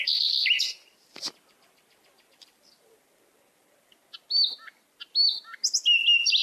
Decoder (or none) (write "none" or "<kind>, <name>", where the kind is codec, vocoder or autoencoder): none